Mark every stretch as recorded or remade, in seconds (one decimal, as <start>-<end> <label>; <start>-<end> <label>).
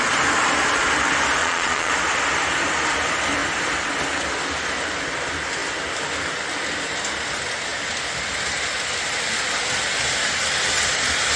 0.0-1.4 recorded; 1.4-1.9 remade; 1.9-11.4 recorded